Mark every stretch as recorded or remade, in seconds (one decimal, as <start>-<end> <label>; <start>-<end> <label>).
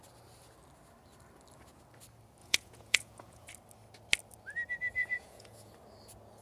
0.0-2.4 recorded; 2.4-3.5 remade; 3.5-5.0 recorded; 5.0-5.7 remade; 5.7-6.4 recorded